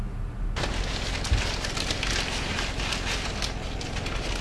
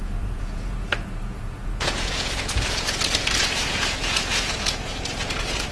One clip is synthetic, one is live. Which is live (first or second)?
first